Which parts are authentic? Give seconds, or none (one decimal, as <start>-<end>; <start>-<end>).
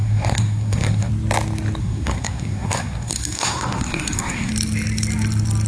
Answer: 1.1-1.8; 4.5-5.7